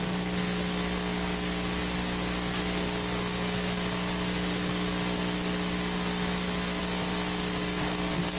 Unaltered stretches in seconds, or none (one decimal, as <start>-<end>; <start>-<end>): 0.0-8.4